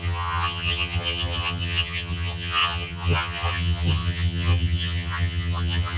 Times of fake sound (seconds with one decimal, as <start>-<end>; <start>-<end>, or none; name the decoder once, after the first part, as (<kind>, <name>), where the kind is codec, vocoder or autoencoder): 0.0-6.0 (vocoder, HiFi-GAN)